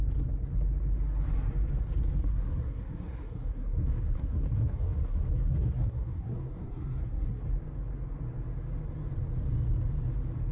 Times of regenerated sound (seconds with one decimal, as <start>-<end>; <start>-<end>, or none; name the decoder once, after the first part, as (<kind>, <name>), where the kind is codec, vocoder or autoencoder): 2.2-7.4 (codec, SNAC)